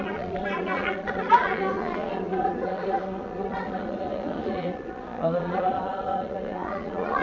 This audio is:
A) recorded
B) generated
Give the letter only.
B